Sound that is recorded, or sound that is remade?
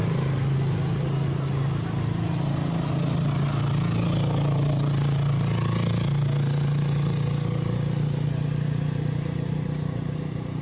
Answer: recorded